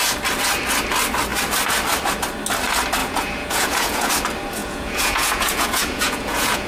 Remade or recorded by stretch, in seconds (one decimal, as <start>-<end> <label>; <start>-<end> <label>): 0.0-3.0 recorded; 3.0-4.1 remade; 4.1-4.6 recorded; 4.6-6.7 remade